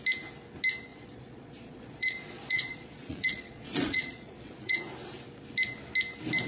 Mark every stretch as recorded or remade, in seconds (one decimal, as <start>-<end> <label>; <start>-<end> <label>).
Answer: 0.0-0.9 recorded; 0.9-4.8 remade; 4.8-6.5 recorded